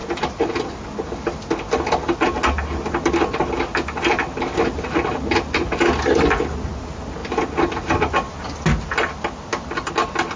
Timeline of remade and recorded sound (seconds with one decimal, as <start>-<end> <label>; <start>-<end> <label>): 0.0-10.4 recorded